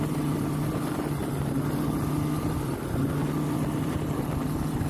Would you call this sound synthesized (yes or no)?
no